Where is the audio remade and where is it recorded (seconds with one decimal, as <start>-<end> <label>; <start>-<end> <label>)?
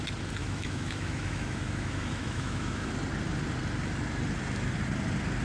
0.0-0.4 recorded; 0.4-2.9 remade; 2.9-5.4 recorded